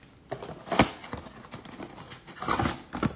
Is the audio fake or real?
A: real